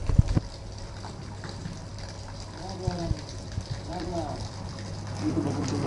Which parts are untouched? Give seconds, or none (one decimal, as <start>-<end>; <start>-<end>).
0.0-1.1